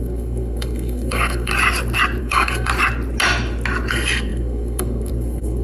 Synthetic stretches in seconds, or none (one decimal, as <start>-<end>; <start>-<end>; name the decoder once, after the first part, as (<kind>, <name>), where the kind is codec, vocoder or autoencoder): 0.0-1.5 (codec, SNAC); 2.2-2.7; 3.9-5.6